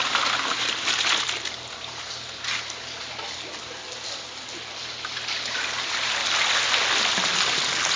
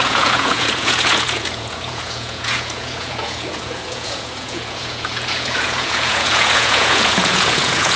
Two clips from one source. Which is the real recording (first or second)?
first